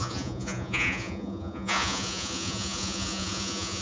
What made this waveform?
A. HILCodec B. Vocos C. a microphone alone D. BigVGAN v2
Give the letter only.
B